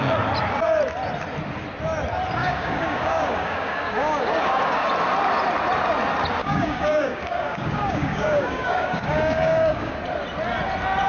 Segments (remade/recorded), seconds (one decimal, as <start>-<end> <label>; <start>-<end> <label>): 0.0-2.4 recorded; 2.4-4.9 remade; 4.9-6.4 recorded; 6.4-10.0 remade; 10.0-11.1 recorded